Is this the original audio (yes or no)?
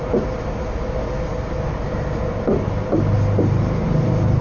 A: yes